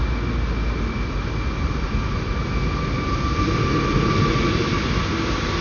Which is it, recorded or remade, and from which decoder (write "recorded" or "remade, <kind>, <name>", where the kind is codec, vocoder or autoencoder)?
recorded